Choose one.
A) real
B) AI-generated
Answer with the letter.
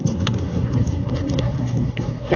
B